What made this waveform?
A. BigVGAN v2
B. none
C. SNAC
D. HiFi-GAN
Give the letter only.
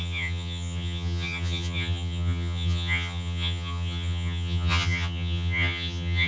D